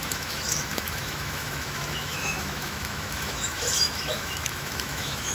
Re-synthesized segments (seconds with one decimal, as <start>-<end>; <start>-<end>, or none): 0.0-5.3